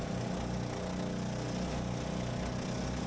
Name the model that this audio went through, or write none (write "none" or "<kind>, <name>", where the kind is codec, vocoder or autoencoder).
none